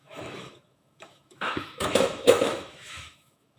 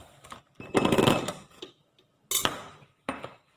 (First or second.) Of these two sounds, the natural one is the second